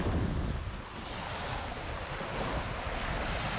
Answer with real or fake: real